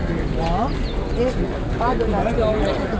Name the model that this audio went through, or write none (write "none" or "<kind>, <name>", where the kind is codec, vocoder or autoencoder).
none